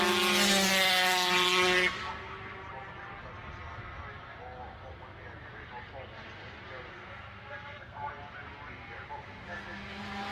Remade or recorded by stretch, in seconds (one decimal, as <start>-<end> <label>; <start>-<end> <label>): 0.0-6.9 recorded; 6.9-8.1 remade; 8.1-10.3 recorded